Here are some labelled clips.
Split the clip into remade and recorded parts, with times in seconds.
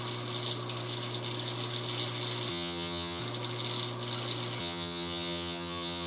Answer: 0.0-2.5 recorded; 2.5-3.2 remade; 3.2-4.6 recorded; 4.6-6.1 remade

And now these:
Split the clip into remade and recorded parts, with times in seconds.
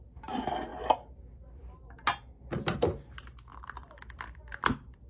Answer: 0.0-5.1 recorded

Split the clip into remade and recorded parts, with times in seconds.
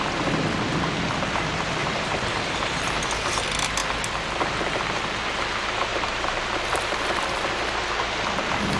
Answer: 0.0-1.8 recorded; 1.8-2.8 remade; 2.8-5.9 recorded; 5.9-7.5 remade; 7.5-8.8 recorded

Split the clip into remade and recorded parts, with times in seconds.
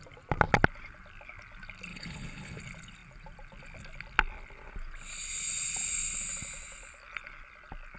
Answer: 0.0-1.9 recorded; 1.9-2.6 remade; 2.6-8.0 recorded